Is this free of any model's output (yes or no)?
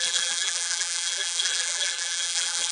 no